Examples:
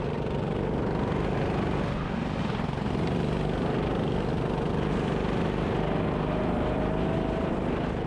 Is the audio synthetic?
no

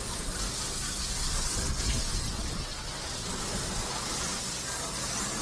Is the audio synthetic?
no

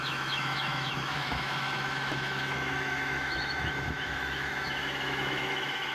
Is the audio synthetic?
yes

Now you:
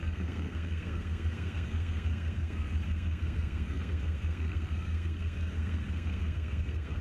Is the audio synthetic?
yes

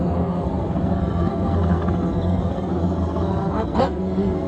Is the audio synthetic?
yes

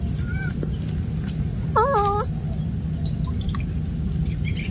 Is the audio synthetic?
no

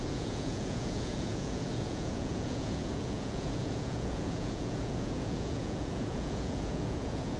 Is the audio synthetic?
yes